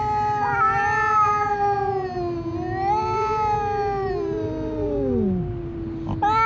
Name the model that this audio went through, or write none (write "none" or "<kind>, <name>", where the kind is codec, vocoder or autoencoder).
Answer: none